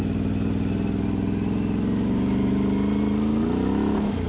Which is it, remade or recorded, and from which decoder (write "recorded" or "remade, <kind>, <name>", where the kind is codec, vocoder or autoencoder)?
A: recorded